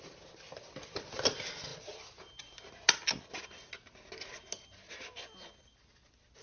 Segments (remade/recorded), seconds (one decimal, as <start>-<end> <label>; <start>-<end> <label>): 0.0-6.4 recorded